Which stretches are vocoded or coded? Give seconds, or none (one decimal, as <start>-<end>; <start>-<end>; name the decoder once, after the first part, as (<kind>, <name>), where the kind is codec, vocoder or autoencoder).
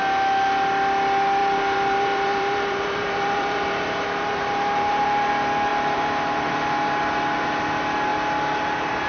1.4-5.3 (vocoder, BigVGAN v2); 5.7-6.9